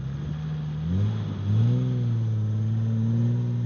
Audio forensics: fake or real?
real